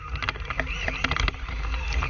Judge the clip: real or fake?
real